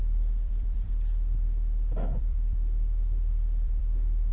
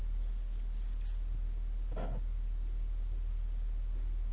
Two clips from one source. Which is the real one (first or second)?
second